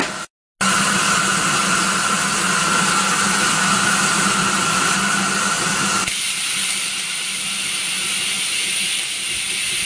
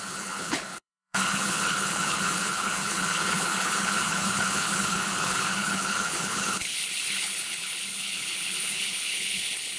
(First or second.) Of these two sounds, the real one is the first